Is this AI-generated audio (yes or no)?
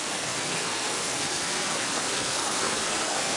yes